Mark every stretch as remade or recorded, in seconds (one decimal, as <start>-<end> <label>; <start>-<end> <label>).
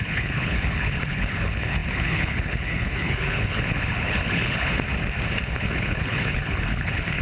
0.0-4.7 remade; 4.7-5.4 recorded; 5.4-7.2 remade